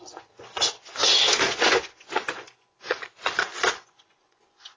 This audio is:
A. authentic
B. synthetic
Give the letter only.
B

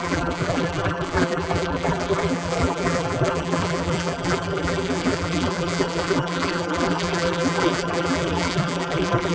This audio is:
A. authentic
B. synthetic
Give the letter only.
B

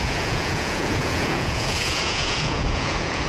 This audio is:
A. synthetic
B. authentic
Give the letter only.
A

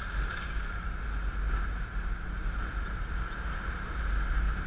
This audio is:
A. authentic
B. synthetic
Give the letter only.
A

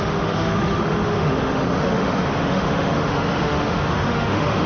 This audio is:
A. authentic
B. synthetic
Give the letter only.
B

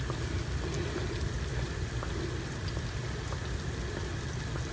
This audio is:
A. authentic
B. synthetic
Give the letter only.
A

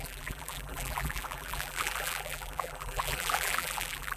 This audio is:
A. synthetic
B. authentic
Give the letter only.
A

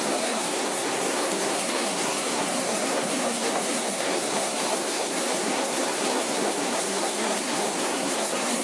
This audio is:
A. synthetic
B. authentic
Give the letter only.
A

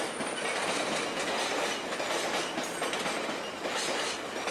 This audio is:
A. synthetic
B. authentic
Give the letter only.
B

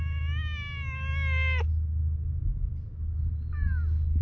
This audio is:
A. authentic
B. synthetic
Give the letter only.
A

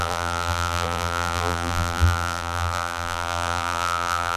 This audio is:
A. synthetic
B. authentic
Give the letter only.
A